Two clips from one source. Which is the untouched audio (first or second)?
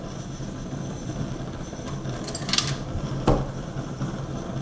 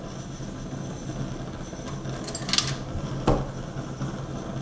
second